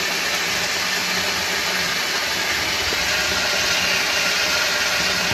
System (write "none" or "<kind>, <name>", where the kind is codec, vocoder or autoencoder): none